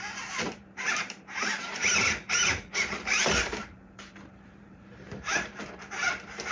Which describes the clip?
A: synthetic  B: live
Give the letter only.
A